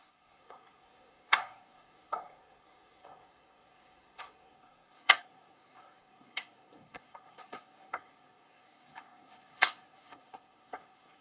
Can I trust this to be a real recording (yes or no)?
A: no